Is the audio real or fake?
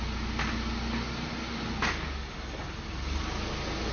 real